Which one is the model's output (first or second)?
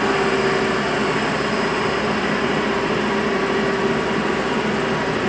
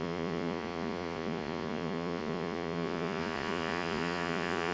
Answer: second